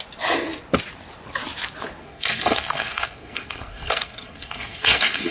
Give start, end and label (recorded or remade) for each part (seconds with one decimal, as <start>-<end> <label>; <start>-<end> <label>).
0.0-2.0 recorded; 2.0-5.3 remade